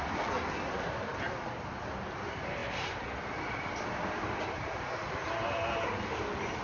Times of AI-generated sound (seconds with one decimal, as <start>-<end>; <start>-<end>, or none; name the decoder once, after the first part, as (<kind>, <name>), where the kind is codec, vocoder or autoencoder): none